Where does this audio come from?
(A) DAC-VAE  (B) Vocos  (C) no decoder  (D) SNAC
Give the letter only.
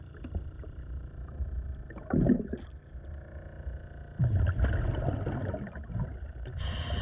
C